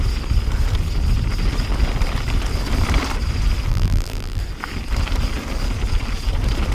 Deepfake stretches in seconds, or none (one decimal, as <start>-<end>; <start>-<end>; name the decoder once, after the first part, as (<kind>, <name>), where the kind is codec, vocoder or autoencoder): 3.7-4.4 (vocoder, BigVGAN v2)